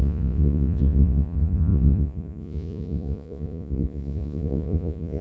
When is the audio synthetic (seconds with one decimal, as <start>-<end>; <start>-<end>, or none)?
0.0-5.2